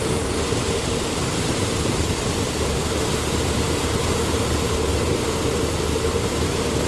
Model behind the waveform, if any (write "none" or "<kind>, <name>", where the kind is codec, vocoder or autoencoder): vocoder, BigVGAN v2